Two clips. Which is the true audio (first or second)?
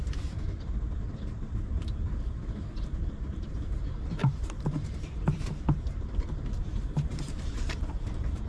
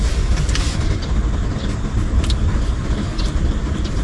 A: second